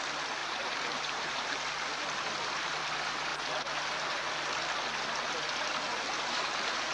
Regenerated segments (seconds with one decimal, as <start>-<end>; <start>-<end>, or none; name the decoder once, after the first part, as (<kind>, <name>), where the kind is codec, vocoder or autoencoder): 0.4-1.6 (vocoder, BigVGAN v2); 5.9-6.9